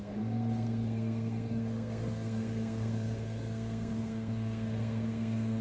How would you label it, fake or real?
fake